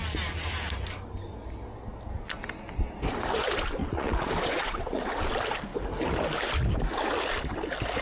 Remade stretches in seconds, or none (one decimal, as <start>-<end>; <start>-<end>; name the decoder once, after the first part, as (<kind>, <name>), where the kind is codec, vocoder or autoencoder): 3.8-5.2 (vocoder, Vocos)